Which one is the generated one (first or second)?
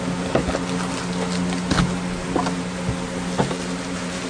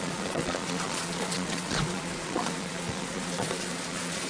second